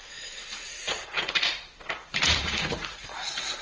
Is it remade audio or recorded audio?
remade